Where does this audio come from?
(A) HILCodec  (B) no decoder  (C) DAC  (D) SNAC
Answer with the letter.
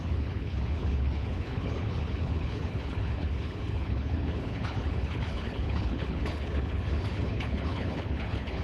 A